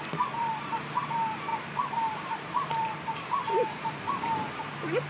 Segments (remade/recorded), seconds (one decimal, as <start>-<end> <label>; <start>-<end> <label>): 0.0-0.4 recorded; 0.4-1.0 remade; 1.0-1.5 recorded; 1.5-4.6 remade; 4.6-5.1 recorded